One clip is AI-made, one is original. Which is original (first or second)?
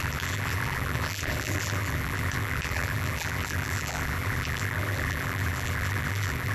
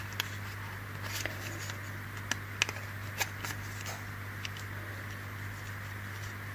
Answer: second